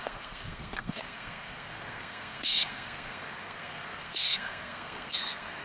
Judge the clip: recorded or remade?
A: remade